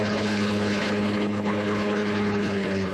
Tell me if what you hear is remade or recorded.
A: remade